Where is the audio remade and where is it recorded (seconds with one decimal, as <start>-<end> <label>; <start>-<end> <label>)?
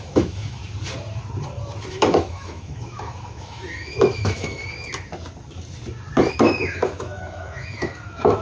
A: 0.0-0.6 remade; 0.6-1.9 recorded; 1.9-4.6 remade; 4.6-6.3 recorded; 6.3-8.4 remade